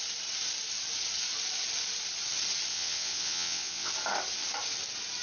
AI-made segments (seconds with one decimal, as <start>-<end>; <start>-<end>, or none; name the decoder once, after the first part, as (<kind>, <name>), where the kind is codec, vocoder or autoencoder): 2.7-3.9 (vocoder, WaveNeXt)